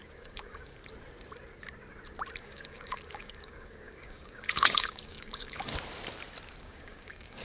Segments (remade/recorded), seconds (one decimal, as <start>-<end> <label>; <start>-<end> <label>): 0.0-0.8 remade; 0.8-2.4 recorded; 2.4-5.7 remade; 5.7-6.6 recorded; 6.6-7.4 remade